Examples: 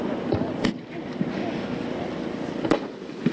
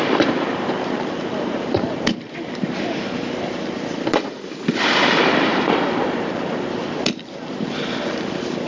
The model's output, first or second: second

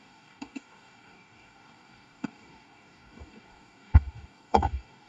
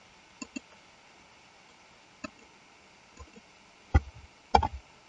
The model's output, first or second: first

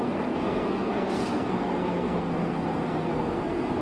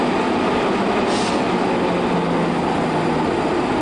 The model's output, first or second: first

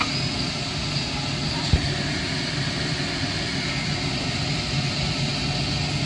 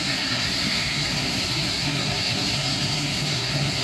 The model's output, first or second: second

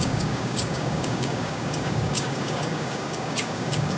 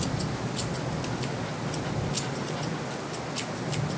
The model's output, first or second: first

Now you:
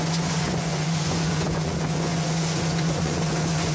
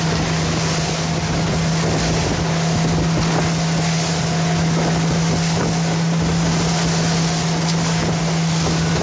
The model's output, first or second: first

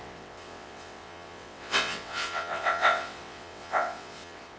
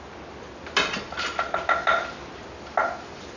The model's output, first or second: first